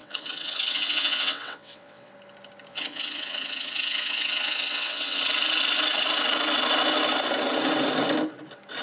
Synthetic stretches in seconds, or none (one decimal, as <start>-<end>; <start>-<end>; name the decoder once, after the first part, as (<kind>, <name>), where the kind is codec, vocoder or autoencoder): 0.0-2.1 (vocoder, WaveNeXt); 2.7-5.2